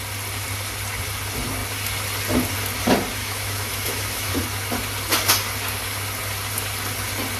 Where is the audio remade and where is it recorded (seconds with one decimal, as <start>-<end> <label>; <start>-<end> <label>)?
0.0-3.2 recorded; 3.2-4.4 remade; 4.4-7.4 recorded